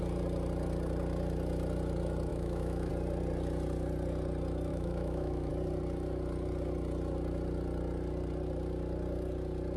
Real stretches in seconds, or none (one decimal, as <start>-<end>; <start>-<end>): 0.0-2.3; 2.9-4.7; 5.5-9.8